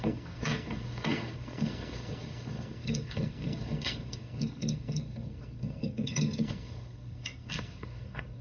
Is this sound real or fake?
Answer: fake